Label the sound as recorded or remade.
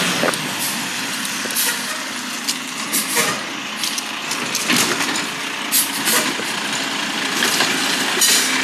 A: recorded